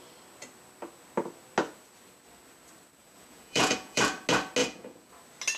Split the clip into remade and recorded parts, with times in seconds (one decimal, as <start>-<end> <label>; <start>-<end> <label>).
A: 0.0-3.0 recorded; 3.0-4.0 remade; 4.0-4.6 recorded; 4.6-5.1 remade; 5.1-5.6 recorded